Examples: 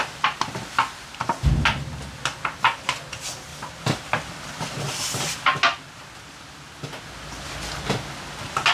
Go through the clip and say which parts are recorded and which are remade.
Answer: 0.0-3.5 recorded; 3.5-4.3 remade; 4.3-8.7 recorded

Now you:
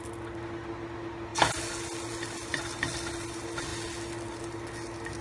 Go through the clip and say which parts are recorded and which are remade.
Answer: 0.0-5.2 recorded